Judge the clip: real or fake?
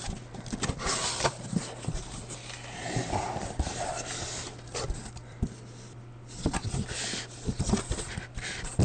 real